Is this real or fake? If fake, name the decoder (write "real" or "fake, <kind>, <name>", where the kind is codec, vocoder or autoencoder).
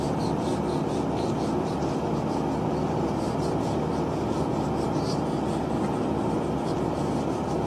real